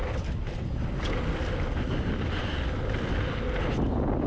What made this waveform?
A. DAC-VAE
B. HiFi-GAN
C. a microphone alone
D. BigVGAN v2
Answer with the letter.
C